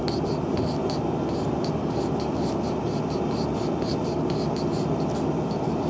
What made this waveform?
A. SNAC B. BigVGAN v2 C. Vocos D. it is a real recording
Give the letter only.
D